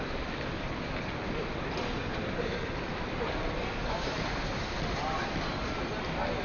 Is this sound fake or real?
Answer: fake